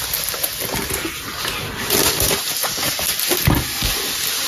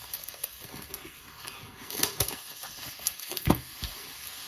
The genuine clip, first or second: first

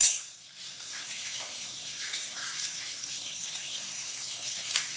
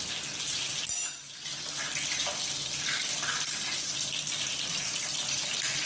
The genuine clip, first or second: second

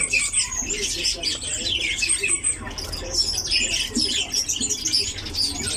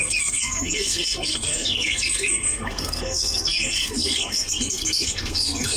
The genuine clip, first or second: first